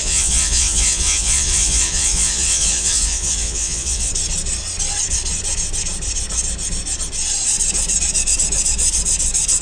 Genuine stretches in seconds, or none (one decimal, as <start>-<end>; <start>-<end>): 4.1-9.6